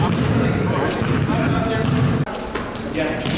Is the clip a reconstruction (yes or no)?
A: no